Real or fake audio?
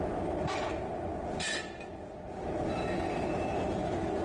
real